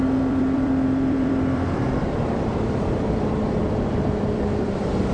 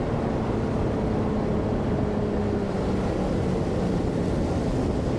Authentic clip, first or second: second